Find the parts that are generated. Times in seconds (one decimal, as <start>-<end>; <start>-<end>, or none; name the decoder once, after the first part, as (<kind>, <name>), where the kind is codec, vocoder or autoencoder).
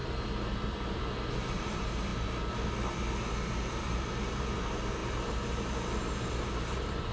0.0-2.1 (vocoder, BigVGAN v2); 3.3-7.1